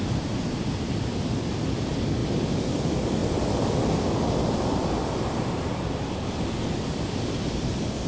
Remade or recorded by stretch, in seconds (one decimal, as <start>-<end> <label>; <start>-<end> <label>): 0.0-2.2 recorded; 2.2-2.7 remade; 2.7-5.0 recorded; 5.0-6.5 remade; 6.5-8.1 recorded